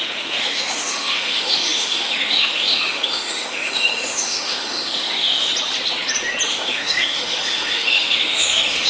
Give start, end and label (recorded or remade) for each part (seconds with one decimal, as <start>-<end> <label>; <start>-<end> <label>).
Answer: 0.0-5.5 remade; 5.5-6.5 recorded; 6.5-8.9 remade